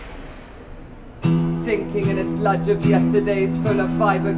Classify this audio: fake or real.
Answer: real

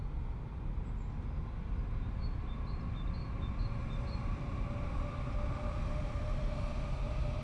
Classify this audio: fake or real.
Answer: real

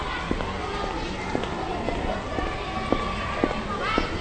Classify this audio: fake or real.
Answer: real